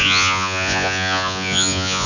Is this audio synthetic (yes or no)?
yes